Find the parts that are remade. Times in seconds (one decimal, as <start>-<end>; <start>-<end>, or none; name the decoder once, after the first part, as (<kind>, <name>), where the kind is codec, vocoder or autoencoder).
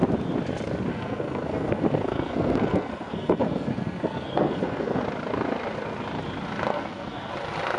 0.9-5.0 (codec, SNAC); 6.7-7.3